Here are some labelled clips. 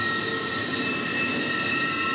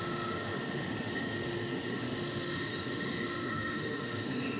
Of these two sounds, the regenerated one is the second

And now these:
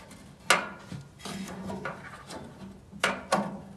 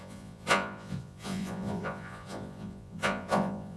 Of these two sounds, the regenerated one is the second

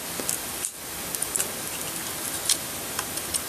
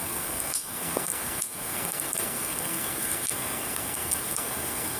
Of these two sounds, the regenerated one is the second